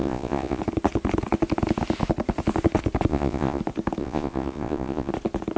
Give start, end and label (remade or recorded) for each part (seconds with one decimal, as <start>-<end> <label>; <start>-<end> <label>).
0.0-0.6 remade; 0.6-3.1 recorded; 3.1-3.6 remade; 3.6-4.0 recorded; 4.0-5.1 remade; 5.1-5.6 recorded

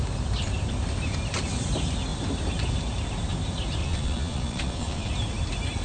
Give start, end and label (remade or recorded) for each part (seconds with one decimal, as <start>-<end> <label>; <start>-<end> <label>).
0.0-3.8 recorded; 3.8-5.1 remade; 5.1-5.8 recorded

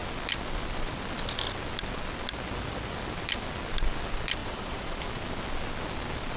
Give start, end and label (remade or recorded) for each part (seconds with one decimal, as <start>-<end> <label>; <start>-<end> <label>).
0.0-4.4 recorded; 4.4-5.0 remade; 5.0-6.4 recorded

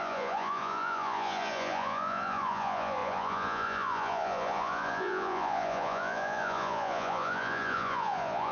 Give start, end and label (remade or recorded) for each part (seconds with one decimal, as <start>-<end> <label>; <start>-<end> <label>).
0.0-8.5 remade

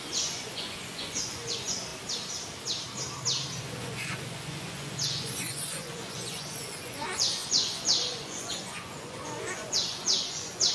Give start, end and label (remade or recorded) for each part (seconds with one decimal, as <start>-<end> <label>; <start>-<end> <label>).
0.0-1.9 remade; 1.9-3.6 recorded; 3.6-10.7 remade

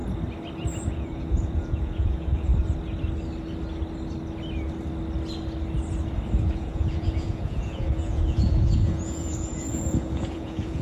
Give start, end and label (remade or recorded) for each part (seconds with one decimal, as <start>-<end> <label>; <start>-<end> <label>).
0.0-0.9 recorded; 0.9-2.5 remade; 2.5-6.4 recorded; 6.4-10.8 remade

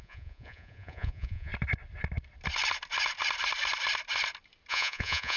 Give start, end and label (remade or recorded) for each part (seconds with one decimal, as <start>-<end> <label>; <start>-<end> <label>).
0.0-1.5 remade; 1.5-4.7 recorded; 4.7-5.4 remade

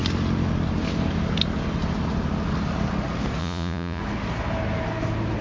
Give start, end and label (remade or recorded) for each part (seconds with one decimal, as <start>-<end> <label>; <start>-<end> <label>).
0.0-3.4 recorded; 3.4-4.0 remade; 4.0-5.4 recorded